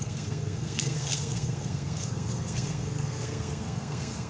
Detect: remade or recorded remade